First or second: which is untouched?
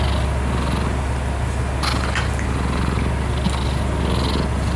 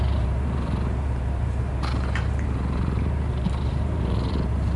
first